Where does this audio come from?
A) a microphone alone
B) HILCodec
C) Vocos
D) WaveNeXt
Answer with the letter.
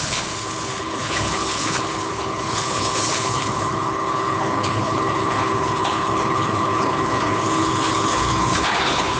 B